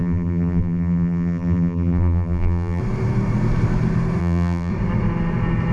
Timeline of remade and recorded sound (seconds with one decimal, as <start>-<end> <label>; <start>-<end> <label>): 0.0-2.8 remade; 2.8-4.2 recorded; 4.2-4.7 remade; 4.7-5.7 recorded